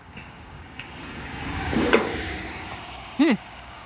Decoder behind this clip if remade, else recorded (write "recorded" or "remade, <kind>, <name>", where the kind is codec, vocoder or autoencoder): remade, codec, DAC